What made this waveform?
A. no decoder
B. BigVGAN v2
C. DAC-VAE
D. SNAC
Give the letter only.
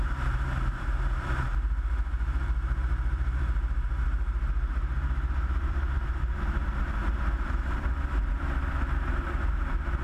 B